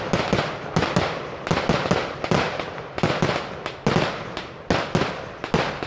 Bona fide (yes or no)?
yes